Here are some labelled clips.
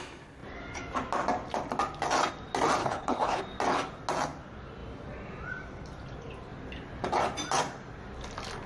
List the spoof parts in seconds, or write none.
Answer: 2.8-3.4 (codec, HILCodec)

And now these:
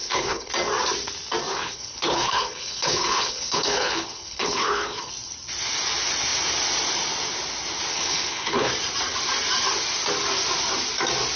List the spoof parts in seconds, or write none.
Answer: 0.0-0.5 (codec, HILCodec); 1.5-5.1; 7.9-8.7

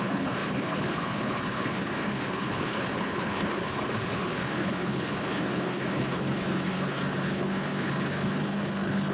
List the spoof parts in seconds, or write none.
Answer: 0.0-9.1 (codec, HILCodec)

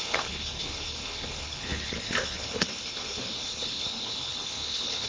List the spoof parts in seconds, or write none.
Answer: 0.0-5.1 (codec, HILCodec)

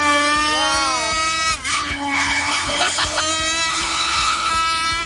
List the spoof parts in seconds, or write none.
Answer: 1.7-3.2 (codec, HILCodec); 3.7-4.5

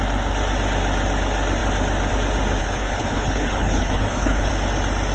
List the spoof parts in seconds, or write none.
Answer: 2.6-4.5 (codec, HILCodec)

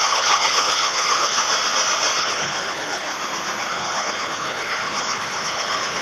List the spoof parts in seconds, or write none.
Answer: 0.0-1.4 (codec, HILCodec); 2.2-3.1; 3.7-6.0

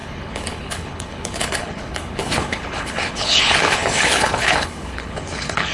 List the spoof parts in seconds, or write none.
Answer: 0.0-5.7 (codec, HILCodec)